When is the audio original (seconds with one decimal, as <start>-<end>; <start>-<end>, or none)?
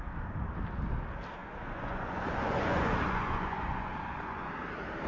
0.0-1.4; 4.5-5.1